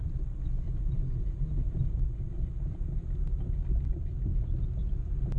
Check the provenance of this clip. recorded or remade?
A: recorded